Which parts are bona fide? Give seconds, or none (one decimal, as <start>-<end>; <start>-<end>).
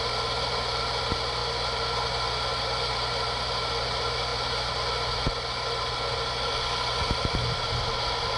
0.0-8.4